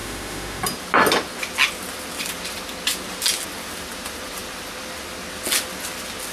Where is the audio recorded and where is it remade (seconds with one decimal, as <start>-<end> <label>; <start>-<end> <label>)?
0.0-0.6 remade; 0.6-6.3 recorded